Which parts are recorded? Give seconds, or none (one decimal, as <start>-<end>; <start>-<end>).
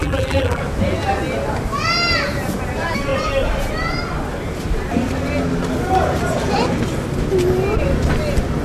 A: 0.6-8.6